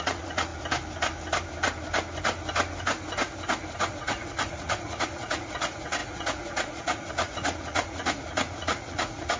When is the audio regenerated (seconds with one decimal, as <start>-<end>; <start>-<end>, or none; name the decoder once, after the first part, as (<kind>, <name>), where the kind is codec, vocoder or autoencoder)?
0.0-0.5 (vocoder, Vocos); 3.9-9.4